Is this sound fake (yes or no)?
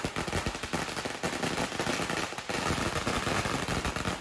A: no